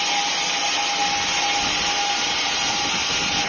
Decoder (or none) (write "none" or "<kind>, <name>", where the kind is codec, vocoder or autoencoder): none